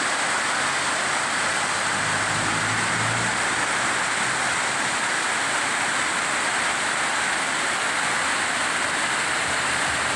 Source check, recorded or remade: recorded